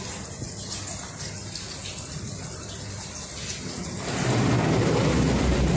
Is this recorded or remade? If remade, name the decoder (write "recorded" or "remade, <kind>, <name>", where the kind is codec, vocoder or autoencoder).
recorded